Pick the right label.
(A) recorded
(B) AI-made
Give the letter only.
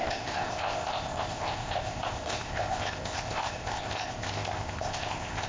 B